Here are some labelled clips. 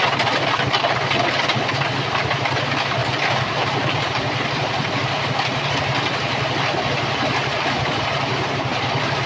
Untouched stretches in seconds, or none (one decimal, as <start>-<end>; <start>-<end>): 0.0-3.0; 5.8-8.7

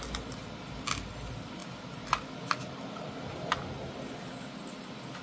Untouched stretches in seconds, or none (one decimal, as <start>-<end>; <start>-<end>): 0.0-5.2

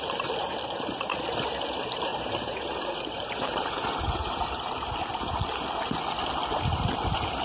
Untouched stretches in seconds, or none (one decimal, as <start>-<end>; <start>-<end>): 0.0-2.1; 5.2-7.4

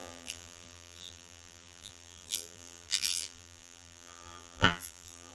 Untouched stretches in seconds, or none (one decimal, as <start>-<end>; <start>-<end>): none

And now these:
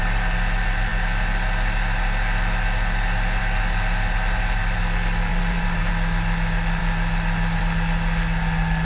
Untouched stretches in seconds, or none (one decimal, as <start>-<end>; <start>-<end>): 0.0-5.3; 5.9-8.8

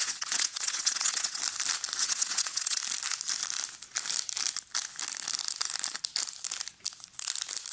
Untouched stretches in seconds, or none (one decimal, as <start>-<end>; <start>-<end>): 1.4-2.0; 2.8-7.7

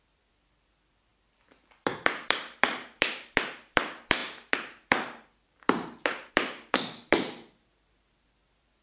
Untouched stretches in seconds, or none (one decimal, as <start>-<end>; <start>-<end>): none

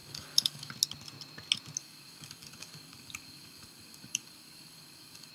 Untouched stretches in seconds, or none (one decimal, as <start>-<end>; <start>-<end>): 0.7-1.8